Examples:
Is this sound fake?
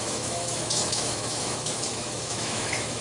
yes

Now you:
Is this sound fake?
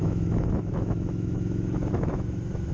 yes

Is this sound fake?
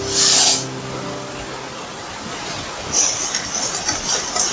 no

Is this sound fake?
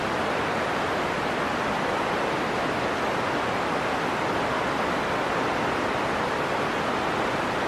no